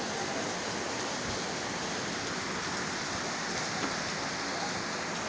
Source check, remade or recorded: recorded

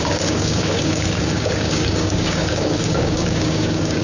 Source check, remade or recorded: remade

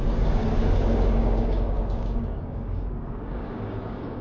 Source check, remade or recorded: remade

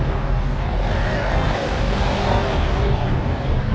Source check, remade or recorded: remade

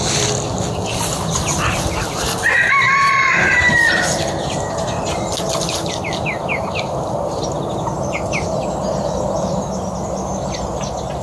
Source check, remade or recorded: recorded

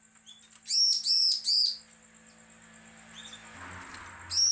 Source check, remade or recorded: recorded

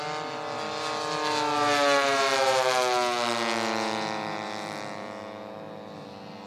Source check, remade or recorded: recorded